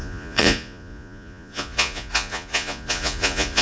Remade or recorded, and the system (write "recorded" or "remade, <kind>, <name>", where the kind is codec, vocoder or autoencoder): remade, vocoder, Vocos